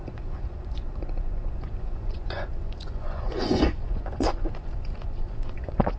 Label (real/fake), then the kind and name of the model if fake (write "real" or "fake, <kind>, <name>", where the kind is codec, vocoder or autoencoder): fake, vocoder, Vocos